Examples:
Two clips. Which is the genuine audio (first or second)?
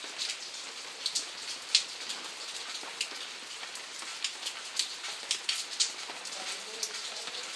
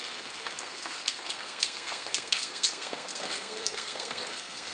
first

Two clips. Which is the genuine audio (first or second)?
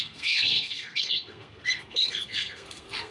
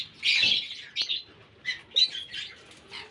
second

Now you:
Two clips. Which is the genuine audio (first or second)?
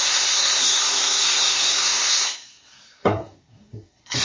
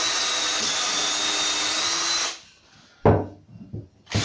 second